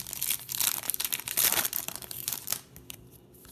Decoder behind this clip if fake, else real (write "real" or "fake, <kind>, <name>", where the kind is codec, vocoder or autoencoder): fake, vocoder, BigVGAN v2